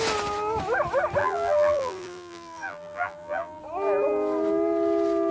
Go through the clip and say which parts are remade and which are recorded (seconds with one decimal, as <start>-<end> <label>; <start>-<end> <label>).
0.0-1.2 recorded; 1.2-3.6 remade; 3.6-5.3 recorded